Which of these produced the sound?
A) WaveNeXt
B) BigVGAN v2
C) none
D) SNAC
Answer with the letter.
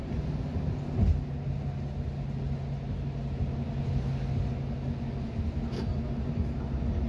C